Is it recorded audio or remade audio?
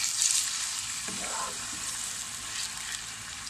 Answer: recorded